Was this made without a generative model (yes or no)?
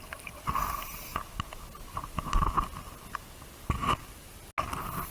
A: yes